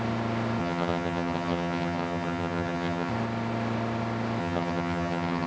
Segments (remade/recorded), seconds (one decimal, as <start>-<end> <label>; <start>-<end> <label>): 0.0-0.6 recorded; 0.6-3.1 remade; 3.1-4.4 recorded; 4.4-5.5 remade